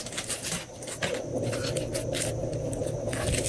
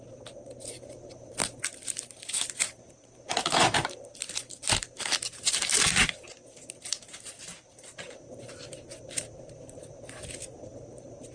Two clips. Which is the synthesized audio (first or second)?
second